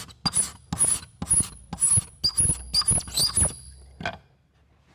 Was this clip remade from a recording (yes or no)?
no